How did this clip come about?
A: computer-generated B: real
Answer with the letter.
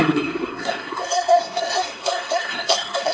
A